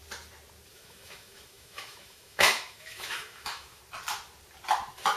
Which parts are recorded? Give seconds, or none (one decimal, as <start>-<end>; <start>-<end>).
0.0-0.7; 3.8-5.2